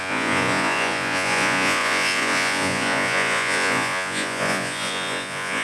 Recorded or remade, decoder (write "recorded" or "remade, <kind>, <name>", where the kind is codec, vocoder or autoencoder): remade, vocoder, Vocos